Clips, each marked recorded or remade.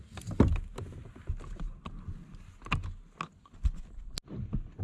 recorded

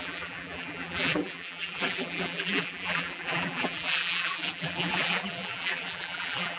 remade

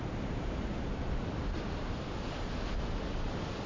recorded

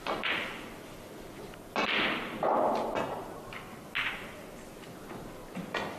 recorded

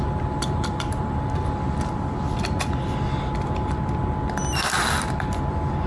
remade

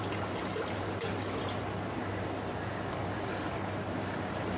recorded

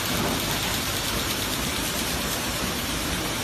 recorded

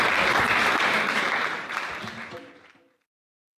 remade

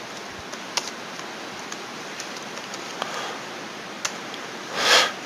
recorded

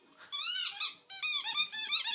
recorded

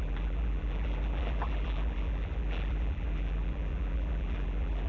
remade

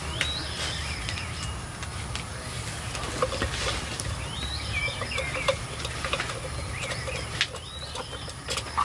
recorded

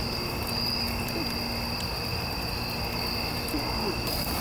recorded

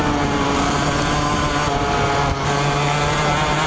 recorded